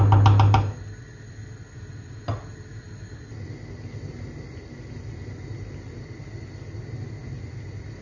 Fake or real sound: real